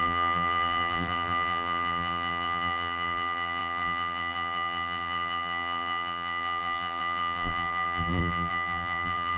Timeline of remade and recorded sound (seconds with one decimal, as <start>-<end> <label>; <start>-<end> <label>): 0.0-9.4 remade